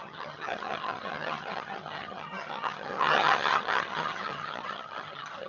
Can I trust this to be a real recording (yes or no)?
no